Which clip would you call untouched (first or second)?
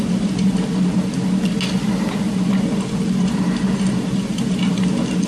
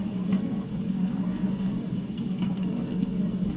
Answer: first